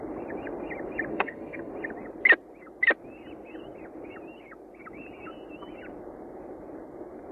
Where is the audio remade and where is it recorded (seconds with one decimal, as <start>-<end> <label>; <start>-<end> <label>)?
0.0-1.1 recorded; 1.1-1.7 remade; 1.7-7.3 recorded

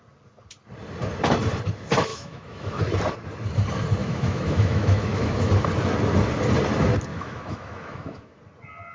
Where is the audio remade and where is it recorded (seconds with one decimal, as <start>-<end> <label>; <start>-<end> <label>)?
0.0-2.1 recorded; 2.1-2.8 remade; 2.8-4.0 recorded; 4.0-5.5 remade; 5.5-7.1 recorded; 7.1-8.4 remade; 8.4-8.9 recorded

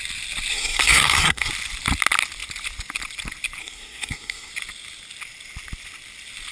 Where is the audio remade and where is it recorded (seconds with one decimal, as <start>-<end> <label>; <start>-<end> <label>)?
0.0-0.5 recorded; 0.5-1.5 remade; 1.5-3.6 recorded; 3.6-4.5 remade; 4.5-6.5 recorded

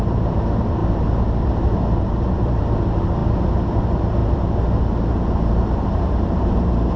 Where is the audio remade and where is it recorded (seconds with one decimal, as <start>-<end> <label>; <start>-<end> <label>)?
0.0-0.8 remade; 0.8-2.2 recorded; 2.2-3.2 remade; 3.2-3.8 recorded; 3.8-4.2 remade; 4.2-4.7 recorded; 4.7-7.0 remade

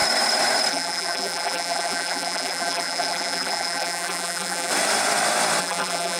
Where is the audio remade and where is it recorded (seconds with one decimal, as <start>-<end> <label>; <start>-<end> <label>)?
0.0-0.7 recorded; 0.7-4.7 remade; 4.7-5.6 recorded; 5.6-6.2 remade

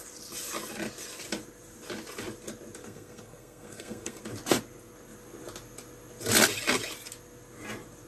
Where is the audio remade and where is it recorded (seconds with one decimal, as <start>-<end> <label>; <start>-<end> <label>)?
0.0-2.8 recorded; 2.8-4.2 remade; 4.2-8.1 recorded

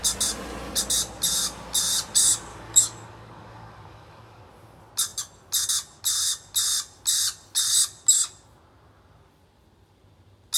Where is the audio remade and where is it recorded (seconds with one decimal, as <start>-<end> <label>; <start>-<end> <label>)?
0.0-2.5 recorded; 2.5-4.5 remade; 4.5-10.6 recorded

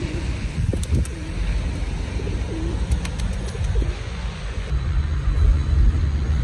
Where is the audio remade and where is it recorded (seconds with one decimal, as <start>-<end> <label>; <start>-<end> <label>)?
0.0-0.7 remade; 0.7-3.2 recorded; 3.2-6.4 remade